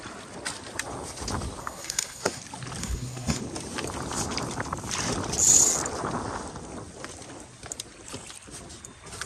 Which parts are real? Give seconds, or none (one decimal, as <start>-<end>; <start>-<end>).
0.0-1.6; 2.4-2.8; 3.4-9.3